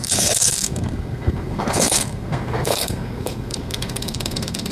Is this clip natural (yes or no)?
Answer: no